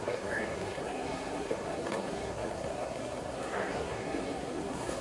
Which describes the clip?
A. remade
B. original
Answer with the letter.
A